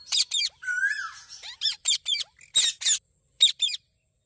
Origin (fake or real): real